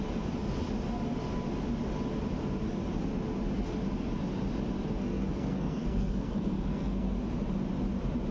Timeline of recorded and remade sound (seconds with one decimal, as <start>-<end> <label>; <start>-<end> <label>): 0.0-5.0 recorded; 5.0-7.2 remade; 7.2-8.3 recorded